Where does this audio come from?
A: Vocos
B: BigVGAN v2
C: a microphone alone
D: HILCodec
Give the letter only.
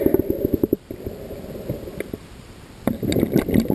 B